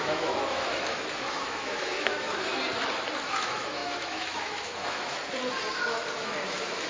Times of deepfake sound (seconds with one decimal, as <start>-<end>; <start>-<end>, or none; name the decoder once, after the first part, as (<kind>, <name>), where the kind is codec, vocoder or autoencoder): 0.0-2.5 (autoencoder, DAC-VAE); 3.2-5.2; 6.2-6.9